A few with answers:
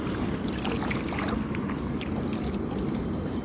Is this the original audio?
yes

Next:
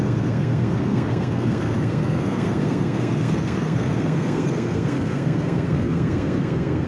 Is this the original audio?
no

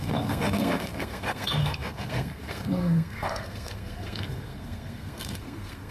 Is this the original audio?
no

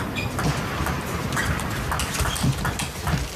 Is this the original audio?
yes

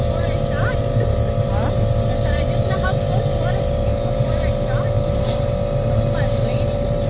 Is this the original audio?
no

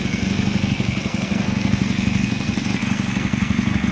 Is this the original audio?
no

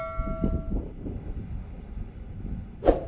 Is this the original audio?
yes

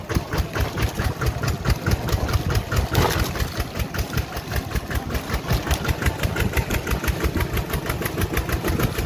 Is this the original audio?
yes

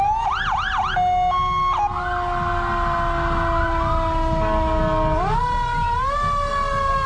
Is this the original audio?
yes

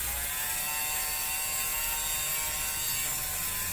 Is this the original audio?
yes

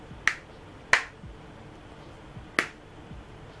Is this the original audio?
yes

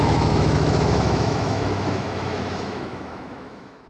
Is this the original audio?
no